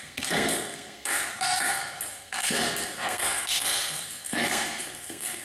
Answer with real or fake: fake